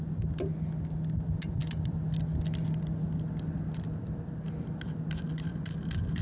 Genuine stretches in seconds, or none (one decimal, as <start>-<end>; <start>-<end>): 0.0-6.2